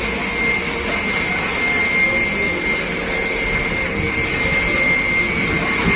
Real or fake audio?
real